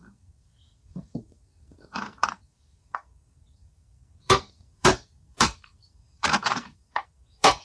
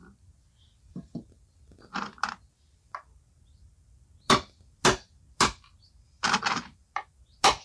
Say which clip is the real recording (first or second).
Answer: second